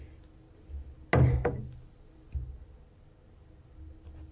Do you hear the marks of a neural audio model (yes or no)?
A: no